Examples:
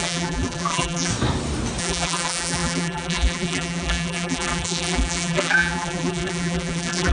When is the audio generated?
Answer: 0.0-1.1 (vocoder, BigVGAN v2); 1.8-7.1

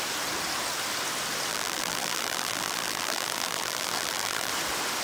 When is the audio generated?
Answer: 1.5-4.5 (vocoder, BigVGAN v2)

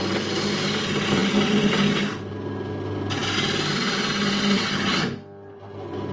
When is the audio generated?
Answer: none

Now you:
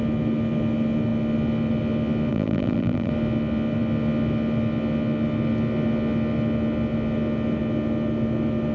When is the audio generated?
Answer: 2.3-3.1 (vocoder, BigVGAN v2)